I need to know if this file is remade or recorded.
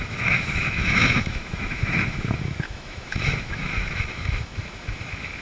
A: remade